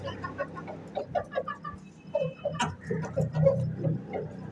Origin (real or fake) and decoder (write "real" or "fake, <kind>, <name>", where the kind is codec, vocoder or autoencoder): real